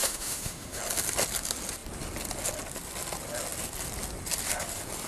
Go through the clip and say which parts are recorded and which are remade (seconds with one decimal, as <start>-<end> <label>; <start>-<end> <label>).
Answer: 0.0-0.8 remade; 0.8-5.1 recorded